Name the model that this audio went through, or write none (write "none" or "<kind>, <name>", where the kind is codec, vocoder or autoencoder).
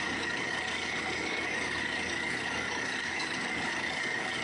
codec, DAC